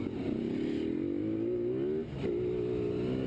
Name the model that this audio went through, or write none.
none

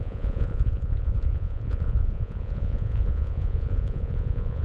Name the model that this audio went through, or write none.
vocoder, Vocos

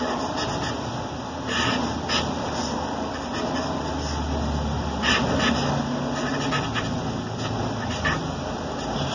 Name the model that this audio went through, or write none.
none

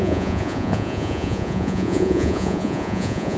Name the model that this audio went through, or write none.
vocoder, Vocos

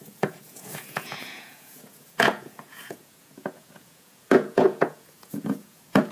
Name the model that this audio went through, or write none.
vocoder, Vocos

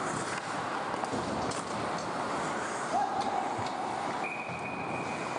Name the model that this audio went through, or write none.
none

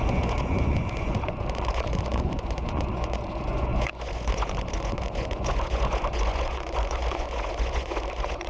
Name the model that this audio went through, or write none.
vocoder, Vocos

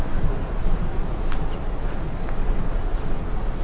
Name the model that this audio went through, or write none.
none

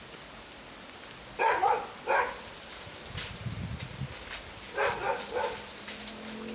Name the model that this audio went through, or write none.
none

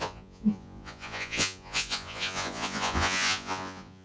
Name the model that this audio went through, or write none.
vocoder, Vocos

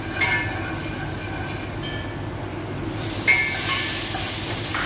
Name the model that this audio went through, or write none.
none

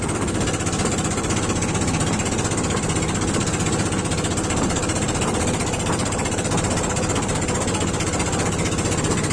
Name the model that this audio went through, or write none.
none